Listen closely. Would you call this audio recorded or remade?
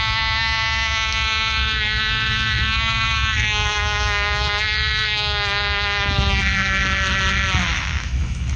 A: remade